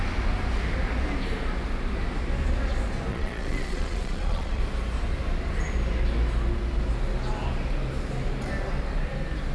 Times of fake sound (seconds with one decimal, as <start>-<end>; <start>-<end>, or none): 3.1-4.6